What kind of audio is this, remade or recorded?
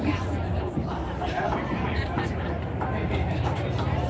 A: remade